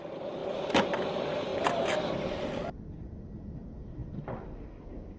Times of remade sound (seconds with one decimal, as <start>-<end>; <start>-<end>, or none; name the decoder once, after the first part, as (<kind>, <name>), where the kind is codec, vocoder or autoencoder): none